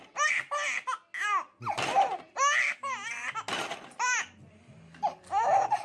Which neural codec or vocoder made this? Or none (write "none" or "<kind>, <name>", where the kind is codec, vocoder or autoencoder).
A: none